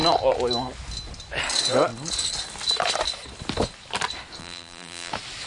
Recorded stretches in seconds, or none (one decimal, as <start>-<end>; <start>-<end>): 0.0-4.4; 5.1-5.5